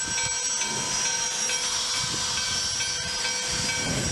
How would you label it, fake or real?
real